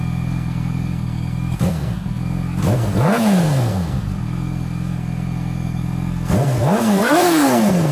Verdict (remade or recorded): remade